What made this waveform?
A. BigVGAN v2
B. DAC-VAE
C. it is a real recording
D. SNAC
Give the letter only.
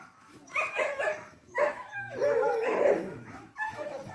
B